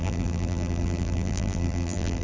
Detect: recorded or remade remade